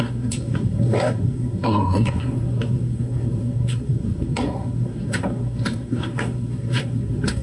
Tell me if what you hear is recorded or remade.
remade